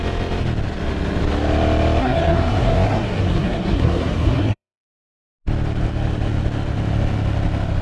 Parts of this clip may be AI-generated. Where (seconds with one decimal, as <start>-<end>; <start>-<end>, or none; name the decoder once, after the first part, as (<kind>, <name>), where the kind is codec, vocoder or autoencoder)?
2.0-5.1 (codec, SNAC)